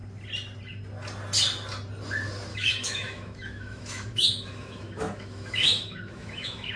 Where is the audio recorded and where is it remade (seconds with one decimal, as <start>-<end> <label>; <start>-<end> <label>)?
0.0-2.5 recorded; 2.5-6.8 remade

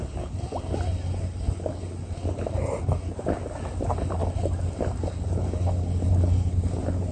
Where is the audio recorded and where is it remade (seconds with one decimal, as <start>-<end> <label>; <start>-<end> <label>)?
0.0-7.1 recorded